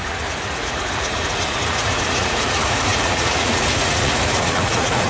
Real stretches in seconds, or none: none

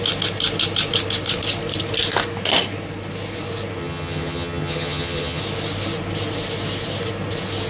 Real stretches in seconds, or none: 0.0-3.8; 5.4-7.7

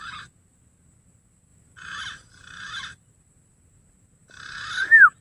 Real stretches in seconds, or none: 0.0-5.2

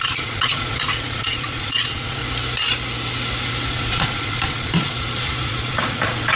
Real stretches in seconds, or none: 2.2-3.7

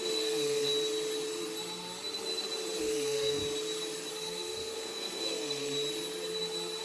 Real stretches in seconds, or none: 0.7-2.8; 3.4-4.1; 5.6-6.8

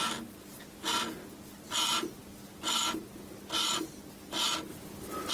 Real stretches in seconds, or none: 0.0-5.3

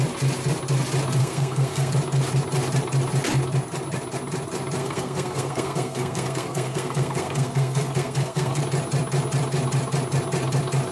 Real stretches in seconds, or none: 0.0-1.2; 1.9-4.8; 8.6-10.9